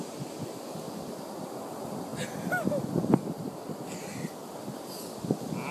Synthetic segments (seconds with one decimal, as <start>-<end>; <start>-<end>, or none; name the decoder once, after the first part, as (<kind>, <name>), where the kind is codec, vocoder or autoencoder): none